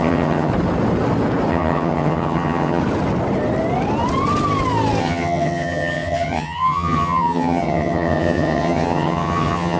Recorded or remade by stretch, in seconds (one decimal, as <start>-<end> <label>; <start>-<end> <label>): 0.0-0.5 remade; 0.5-1.5 recorded; 1.5-2.8 remade; 2.8-5.0 recorded; 5.0-9.8 remade